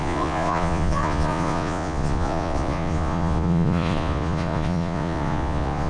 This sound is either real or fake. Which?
fake